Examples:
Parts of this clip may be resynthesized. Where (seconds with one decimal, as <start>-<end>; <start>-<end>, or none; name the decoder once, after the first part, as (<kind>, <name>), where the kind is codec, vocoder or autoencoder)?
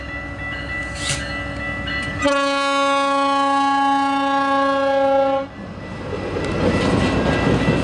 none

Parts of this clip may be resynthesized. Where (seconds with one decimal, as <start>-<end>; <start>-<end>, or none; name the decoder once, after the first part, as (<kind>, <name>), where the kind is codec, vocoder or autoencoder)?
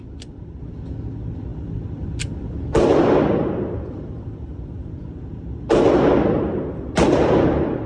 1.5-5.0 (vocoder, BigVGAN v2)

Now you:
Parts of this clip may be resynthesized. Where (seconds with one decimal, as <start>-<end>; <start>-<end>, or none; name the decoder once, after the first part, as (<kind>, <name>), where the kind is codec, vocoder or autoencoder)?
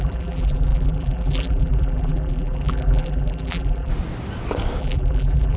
0.0-3.9 (vocoder, BigVGAN v2); 4.8-5.6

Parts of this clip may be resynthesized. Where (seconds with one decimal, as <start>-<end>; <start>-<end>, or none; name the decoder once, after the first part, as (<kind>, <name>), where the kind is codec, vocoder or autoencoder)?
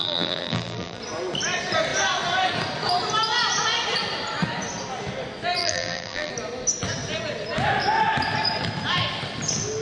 0.0-1.0 (vocoder, BigVGAN v2); 5.6-6.3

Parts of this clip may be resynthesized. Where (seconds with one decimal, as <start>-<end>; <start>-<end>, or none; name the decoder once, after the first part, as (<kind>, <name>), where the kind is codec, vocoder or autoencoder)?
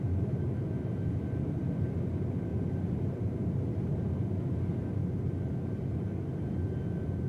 none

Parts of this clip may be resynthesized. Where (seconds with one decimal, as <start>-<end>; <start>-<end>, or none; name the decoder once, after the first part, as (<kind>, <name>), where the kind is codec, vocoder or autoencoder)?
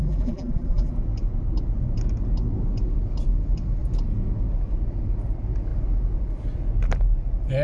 0.0-0.9 (vocoder, BigVGAN v2)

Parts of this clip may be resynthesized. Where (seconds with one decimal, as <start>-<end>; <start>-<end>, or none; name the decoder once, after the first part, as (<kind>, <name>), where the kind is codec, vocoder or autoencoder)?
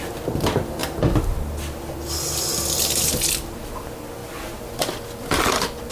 0.8-1.3 (vocoder, BigVGAN v2)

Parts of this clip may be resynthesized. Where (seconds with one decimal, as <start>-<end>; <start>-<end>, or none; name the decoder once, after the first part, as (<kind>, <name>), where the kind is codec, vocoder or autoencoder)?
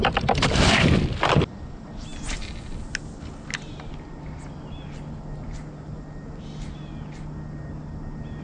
none